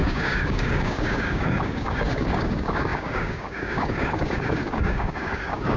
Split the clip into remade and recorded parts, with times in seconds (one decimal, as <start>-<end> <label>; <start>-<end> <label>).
0.0-5.8 remade